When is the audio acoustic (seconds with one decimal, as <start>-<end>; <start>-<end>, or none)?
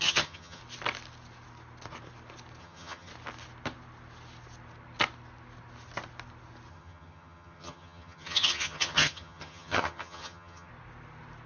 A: 0.6-2.6; 3.1-6.7; 10.7-11.5